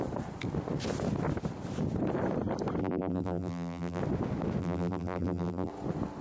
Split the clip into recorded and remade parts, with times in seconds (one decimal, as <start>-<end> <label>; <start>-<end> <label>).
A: 0.0-2.8 recorded; 2.8-4.0 remade; 4.0-4.6 recorded; 4.6-5.7 remade; 5.7-6.2 recorded